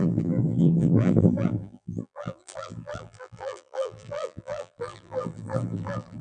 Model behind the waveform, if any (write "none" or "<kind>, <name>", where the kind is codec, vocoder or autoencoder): vocoder, BigVGAN v2